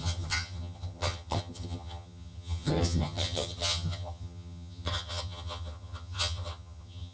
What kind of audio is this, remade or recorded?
remade